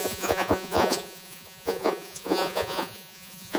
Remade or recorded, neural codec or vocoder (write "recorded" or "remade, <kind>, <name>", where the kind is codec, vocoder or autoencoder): remade, vocoder, Vocos